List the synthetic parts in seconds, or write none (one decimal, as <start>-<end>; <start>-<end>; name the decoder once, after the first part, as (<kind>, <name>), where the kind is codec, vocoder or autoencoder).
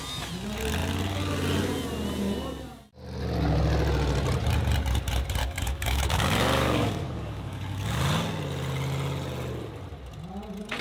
5.4-8.0 (codec, DAC)